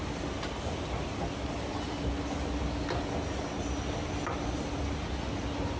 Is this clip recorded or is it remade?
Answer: recorded